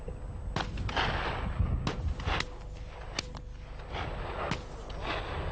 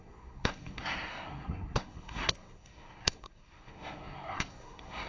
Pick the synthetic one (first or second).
second